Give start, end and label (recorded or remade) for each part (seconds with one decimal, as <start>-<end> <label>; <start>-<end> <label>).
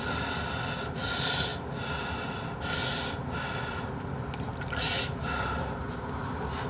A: 0.0-6.7 recorded